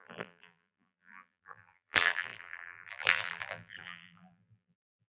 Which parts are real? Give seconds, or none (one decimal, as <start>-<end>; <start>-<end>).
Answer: none